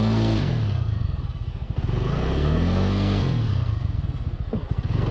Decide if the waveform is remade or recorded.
remade